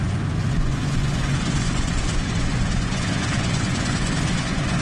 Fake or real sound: fake